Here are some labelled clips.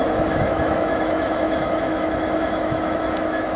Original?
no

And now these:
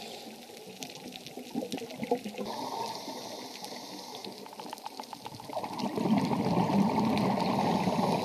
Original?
yes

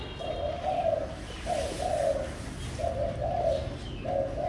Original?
yes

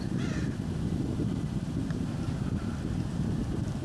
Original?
yes